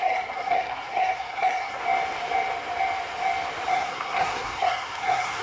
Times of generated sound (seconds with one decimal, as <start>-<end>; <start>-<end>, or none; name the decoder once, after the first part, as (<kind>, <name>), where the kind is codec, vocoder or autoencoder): 0.0-1.8 (codec, SNAC); 3.7-5.4